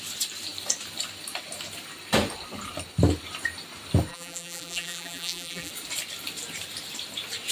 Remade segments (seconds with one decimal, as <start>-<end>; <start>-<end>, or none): 4.1-5.7